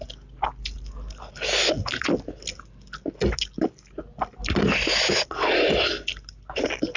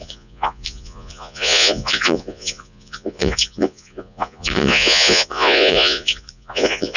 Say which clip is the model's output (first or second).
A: second